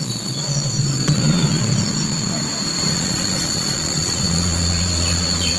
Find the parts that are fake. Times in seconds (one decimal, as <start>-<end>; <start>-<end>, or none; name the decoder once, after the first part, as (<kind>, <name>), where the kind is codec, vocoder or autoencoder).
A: 0.0-2.4 (vocoder, Vocos); 2.9-5.6